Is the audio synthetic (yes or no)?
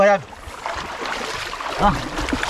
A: no